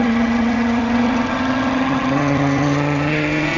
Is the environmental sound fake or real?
fake